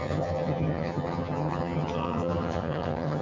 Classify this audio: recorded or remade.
remade